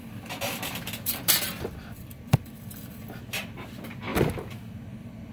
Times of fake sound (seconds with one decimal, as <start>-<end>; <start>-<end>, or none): 0.0-3.2; 4.1-4.7

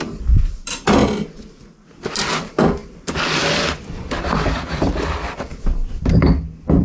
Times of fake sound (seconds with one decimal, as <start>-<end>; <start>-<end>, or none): 0.0-1.0; 2.2-5.5

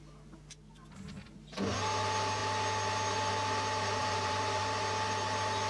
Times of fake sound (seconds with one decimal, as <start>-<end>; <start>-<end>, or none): 4.0-4.6

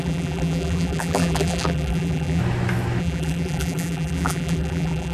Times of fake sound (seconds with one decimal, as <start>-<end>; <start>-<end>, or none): 0.0-2.4; 3.0-5.1